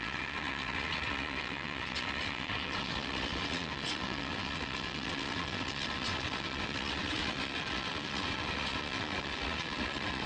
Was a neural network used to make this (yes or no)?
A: yes